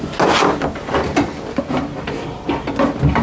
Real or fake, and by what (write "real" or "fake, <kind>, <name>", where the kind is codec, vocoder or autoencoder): real